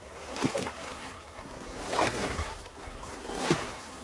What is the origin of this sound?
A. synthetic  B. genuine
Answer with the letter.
A